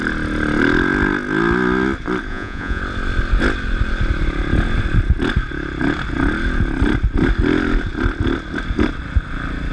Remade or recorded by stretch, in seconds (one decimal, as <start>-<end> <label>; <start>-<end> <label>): 0.0-2.3 recorded; 2.3-2.8 remade; 2.8-9.7 recorded